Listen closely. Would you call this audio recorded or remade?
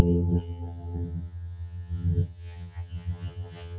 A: remade